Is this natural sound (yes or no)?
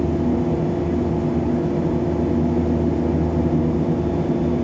yes